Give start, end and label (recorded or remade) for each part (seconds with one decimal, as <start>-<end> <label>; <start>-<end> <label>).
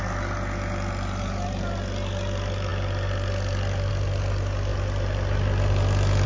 0.0-6.3 recorded